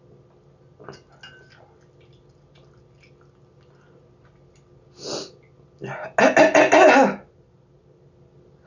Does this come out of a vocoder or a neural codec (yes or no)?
no